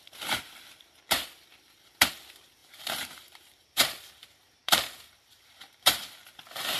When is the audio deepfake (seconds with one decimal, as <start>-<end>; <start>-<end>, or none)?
2.6-6.1